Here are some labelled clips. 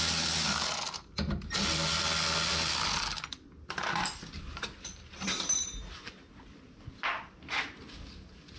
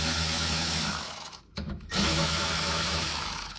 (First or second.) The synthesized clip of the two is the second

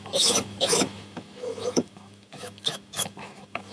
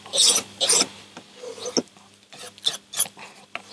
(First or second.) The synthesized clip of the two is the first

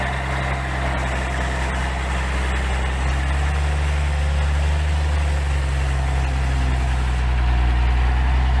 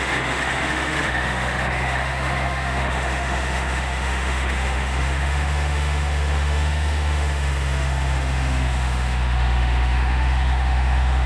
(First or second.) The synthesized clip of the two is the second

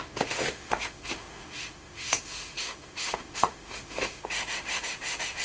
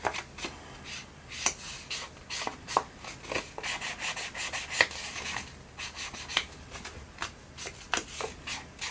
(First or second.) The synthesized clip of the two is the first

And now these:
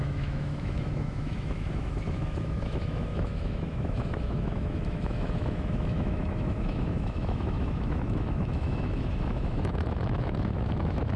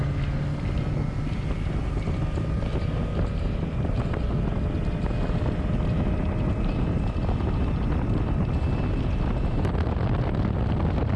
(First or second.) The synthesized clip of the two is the first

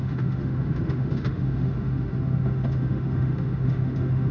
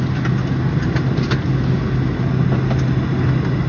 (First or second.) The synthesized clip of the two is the first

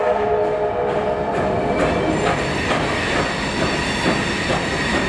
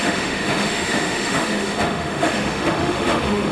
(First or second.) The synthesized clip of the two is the second